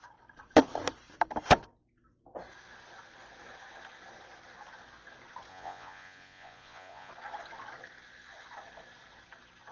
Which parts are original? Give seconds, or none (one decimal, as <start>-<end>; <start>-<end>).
0.0-5.5; 7.1-9.7